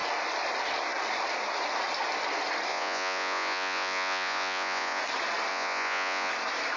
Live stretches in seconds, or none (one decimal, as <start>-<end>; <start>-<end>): 0.0-2.7; 5.0-5.5; 6.3-6.8